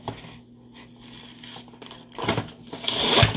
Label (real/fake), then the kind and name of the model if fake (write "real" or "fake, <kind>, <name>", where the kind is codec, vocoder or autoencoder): real